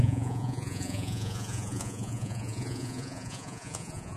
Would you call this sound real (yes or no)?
no